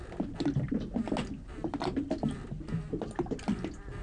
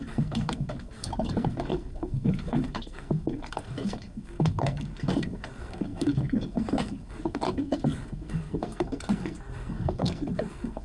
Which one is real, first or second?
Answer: first